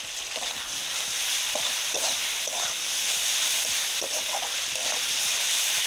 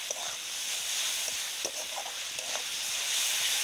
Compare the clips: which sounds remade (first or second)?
first